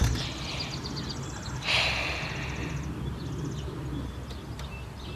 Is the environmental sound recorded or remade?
recorded